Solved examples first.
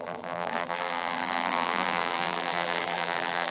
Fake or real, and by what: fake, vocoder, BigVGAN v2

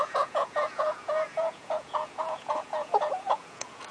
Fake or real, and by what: fake, vocoder, Vocos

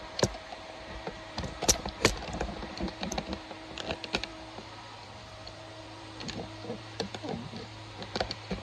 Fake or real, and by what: fake, vocoder, BigVGAN v2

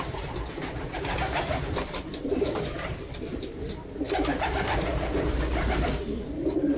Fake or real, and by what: fake, vocoder, BigVGAN v2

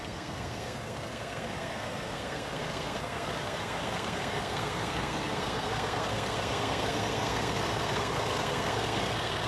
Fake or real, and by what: fake, codec, SNAC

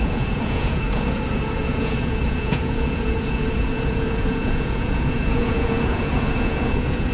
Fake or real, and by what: fake, vocoder, Vocos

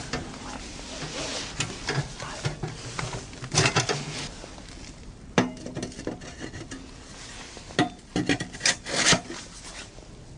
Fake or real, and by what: real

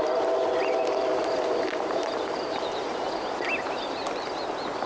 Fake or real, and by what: real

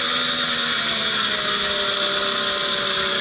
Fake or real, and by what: real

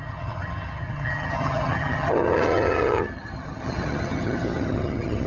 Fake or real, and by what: fake, vocoder, HiFi-GAN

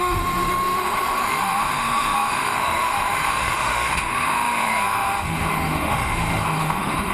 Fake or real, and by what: fake, autoencoder, DAC-VAE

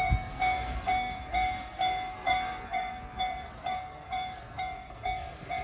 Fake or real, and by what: fake, codec, SNAC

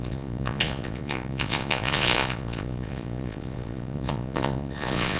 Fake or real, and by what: fake, vocoder, Vocos